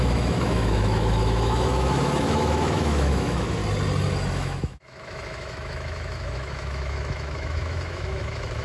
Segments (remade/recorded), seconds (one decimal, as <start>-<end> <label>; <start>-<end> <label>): 0.0-3.6 remade; 3.6-4.3 recorded; 4.3-8.6 remade